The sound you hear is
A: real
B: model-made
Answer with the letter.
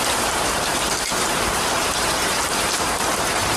B